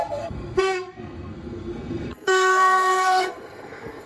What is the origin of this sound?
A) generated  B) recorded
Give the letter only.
A